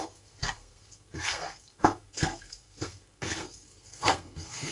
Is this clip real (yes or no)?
no